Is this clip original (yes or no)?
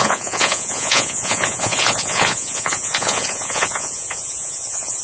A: no